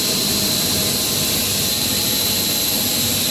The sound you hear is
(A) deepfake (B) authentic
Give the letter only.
B